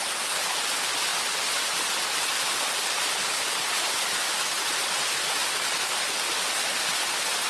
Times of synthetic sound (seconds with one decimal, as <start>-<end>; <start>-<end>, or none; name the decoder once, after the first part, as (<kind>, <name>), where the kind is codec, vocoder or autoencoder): none